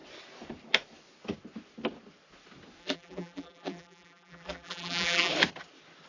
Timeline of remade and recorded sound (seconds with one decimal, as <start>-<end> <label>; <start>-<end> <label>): 0.0-2.8 recorded; 2.8-5.3 remade; 5.3-6.1 recorded